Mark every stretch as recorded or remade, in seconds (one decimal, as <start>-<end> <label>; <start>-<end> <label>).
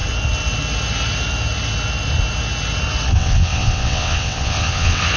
0.0-3.1 recorded; 3.1-5.2 remade